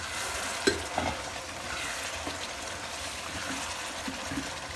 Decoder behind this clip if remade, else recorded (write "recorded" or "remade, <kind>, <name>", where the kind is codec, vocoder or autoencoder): recorded